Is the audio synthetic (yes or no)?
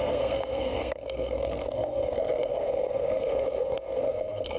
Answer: yes